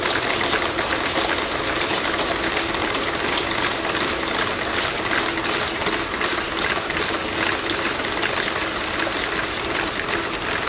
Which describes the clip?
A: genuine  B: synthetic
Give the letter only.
A